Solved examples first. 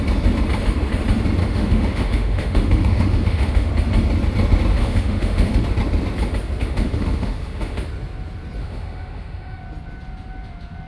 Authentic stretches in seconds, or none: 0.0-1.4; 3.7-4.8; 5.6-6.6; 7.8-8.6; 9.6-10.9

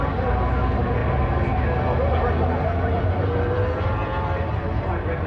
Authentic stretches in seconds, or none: 0.0-5.3

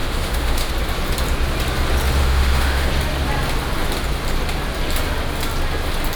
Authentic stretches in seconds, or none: 0.7-2.2; 2.9-6.2

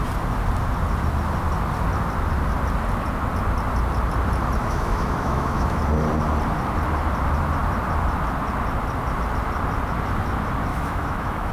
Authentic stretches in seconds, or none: 0.0-4.6; 5.8-10.7

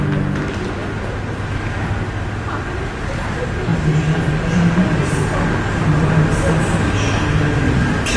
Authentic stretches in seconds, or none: 0.0-8.2